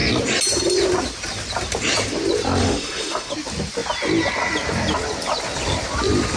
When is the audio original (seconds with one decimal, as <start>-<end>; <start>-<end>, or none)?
0.0-2.6; 3.3-6.4